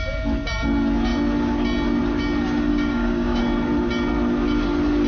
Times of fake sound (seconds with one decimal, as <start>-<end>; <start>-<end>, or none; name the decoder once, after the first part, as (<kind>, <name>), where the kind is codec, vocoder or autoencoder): 2.7-3.4 (codec, DAC)